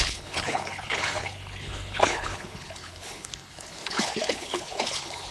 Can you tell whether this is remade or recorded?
remade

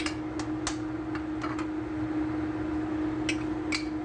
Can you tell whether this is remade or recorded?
recorded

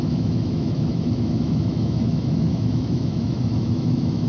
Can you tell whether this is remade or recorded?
remade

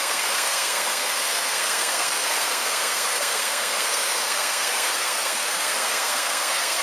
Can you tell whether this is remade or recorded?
remade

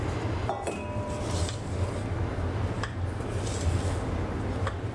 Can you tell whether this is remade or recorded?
recorded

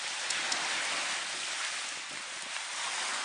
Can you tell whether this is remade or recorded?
recorded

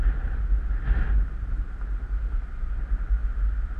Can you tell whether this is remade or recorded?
recorded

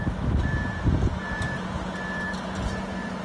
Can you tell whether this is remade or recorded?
recorded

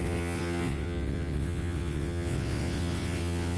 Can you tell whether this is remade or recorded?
remade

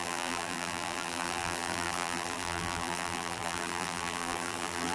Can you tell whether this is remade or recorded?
remade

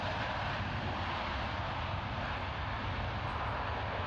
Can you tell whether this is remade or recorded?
recorded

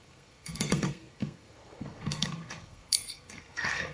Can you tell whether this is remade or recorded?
remade